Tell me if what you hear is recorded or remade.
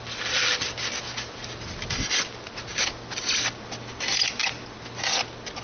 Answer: recorded